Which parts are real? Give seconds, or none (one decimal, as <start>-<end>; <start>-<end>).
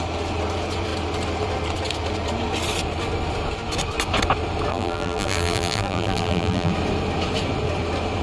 0.0-4.7; 6.7-8.2